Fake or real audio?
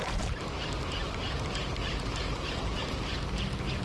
real